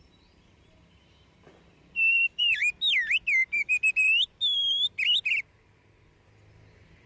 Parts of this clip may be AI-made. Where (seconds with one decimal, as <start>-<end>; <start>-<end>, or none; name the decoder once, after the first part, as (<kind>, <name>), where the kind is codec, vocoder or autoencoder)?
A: 0.0-2.6 (vocoder, BigVGAN v2)